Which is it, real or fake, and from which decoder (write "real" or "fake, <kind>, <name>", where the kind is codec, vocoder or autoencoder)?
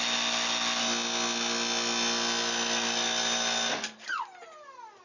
real